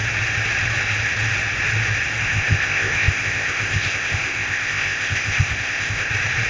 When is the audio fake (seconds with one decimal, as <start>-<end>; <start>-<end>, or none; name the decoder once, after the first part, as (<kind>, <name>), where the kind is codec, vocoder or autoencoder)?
2.2-6.1 (codec, ZipCodec)